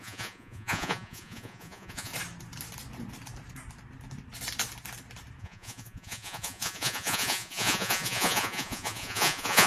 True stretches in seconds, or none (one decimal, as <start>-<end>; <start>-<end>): 2.1-5.4